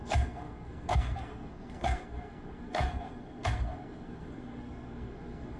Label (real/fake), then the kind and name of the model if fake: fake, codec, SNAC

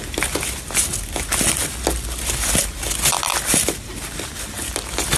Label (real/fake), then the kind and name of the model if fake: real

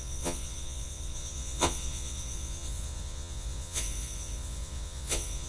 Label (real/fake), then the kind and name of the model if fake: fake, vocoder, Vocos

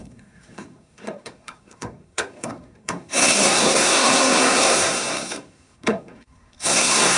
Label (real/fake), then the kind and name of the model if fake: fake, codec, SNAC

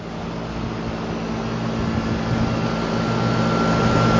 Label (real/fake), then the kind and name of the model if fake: real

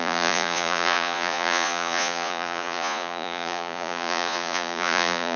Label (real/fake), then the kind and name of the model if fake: fake, vocoder, Vocos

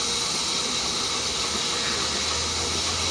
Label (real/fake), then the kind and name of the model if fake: real